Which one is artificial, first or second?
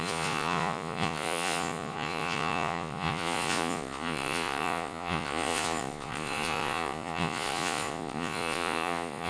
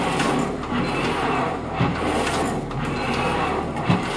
first